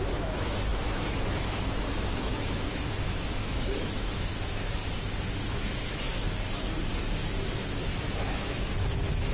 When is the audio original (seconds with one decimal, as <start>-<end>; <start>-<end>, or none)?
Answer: 4.8-5.4; 6.1-7.2